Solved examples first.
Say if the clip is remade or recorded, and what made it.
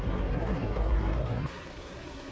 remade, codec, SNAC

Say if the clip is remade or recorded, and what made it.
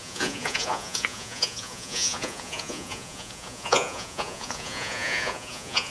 remade, vocoder, Vocos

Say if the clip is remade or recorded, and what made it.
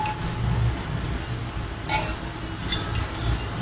recorded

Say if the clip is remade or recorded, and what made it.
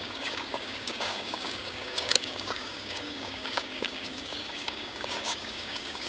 remade, codec, DAC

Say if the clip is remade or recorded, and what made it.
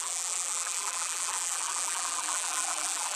remade, vocoder, BigVGAN v2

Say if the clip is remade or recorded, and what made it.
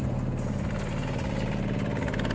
recorded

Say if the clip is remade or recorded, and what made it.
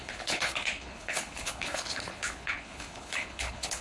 remade, codec, HILCodec